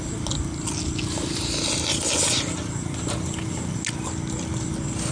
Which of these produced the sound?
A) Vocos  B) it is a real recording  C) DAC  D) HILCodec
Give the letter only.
B